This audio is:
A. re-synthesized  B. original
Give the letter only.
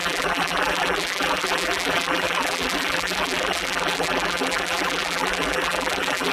A